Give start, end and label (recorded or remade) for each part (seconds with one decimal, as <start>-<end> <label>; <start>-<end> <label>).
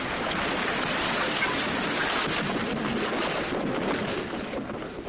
0.0-5.1 recorded